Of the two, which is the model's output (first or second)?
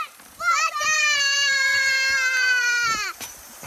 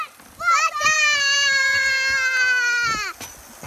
first